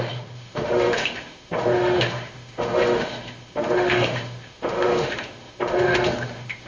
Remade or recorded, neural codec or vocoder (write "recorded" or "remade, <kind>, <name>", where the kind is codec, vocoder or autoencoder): remade, autoencoder, DAC-VAE